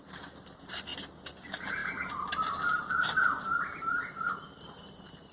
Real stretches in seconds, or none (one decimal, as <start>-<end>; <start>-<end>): 0.9-1.4